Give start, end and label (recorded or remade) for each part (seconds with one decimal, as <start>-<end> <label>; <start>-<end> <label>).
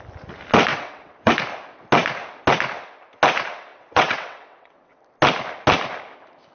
0.0-0.7 recorded; 0.7-1.3 remade; 1.3-3.7 recorded; 3.7-5.0 remade; 5.0-6.5 recorded